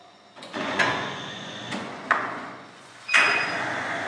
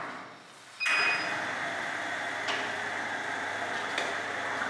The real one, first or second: second